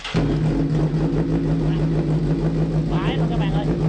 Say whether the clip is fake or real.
real